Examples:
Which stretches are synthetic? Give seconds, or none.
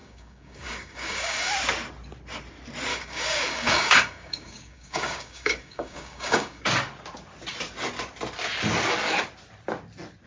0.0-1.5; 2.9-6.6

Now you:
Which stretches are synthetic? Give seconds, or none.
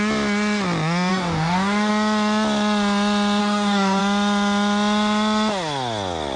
1.1-1.9; 3.4-4.0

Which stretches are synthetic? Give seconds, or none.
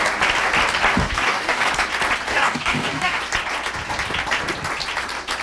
1.0-1.7; 2.3-3.2